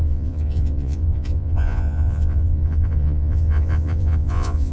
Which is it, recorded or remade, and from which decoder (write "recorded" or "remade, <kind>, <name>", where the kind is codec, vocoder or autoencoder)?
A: remade, vocoder, Vocos